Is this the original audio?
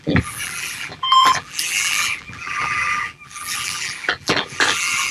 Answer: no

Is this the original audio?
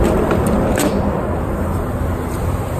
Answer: no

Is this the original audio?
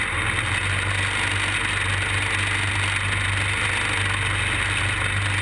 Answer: yes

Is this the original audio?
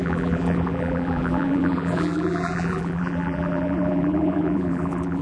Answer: no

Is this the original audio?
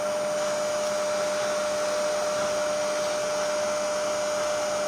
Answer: yes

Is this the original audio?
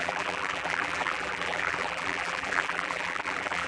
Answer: no